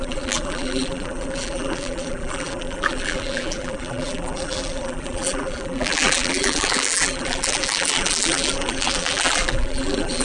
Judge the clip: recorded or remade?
remade